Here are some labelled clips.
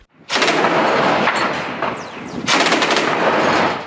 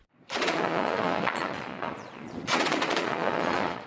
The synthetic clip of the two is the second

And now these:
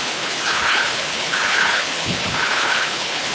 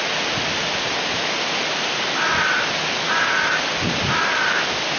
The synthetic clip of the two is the first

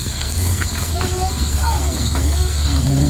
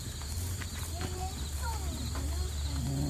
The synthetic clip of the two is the first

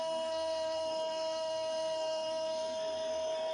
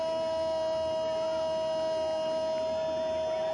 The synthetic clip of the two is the first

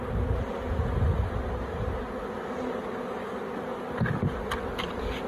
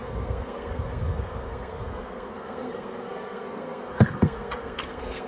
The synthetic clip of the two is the second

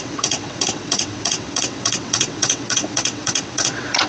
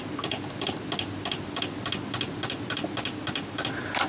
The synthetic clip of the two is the first